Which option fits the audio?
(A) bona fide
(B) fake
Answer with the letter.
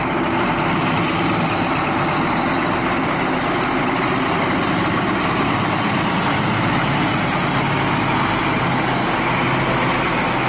A